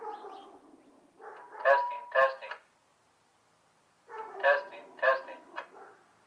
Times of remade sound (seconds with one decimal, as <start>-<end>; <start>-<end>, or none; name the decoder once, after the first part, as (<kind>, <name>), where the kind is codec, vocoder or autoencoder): 0.4-2.0 (vocoder, BigVGAN v2); 2.9-5.8